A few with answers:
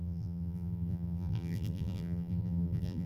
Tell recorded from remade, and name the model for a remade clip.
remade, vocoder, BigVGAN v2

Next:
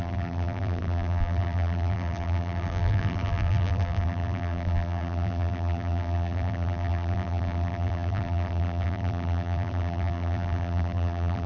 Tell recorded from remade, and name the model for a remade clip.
remade, vocoder, BigVGAN v2